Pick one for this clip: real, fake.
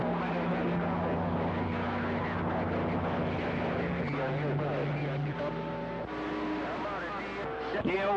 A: real